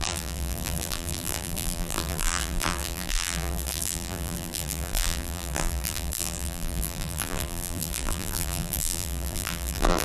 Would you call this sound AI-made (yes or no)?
yes